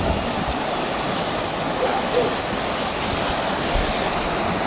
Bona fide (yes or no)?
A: yes